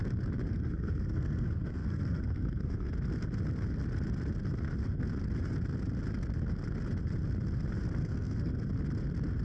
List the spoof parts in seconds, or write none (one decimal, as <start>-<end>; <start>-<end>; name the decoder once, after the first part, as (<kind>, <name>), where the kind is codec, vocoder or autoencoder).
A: 0.5-2.9 (codec, SNAC); 8.0-8.7